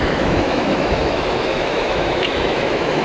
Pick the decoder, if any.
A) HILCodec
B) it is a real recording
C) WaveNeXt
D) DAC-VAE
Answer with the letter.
D